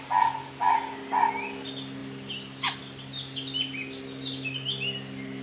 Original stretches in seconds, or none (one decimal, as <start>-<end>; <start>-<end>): 0.0-5.4